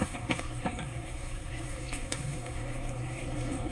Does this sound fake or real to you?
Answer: fake